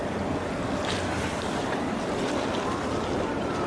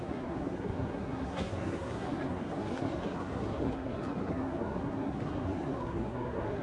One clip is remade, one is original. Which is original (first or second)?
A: first